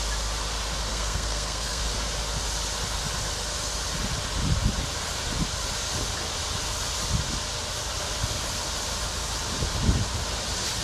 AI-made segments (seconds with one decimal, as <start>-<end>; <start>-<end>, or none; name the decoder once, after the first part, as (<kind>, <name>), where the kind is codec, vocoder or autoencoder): 0.9-1.8 (codec, SNAC)